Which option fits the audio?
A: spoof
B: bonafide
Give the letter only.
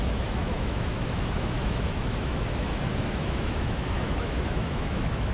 A